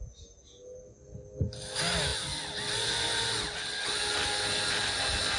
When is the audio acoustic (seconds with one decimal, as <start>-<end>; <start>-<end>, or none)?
0.0-5.4